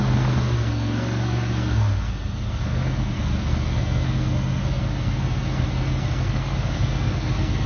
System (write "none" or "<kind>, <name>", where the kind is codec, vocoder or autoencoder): codec, SNAC